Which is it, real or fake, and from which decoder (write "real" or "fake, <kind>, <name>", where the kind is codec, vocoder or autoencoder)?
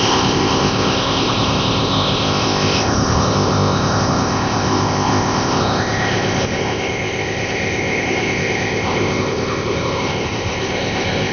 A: fake, codec, ZipCodec